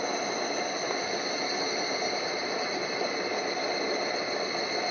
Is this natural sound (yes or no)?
yes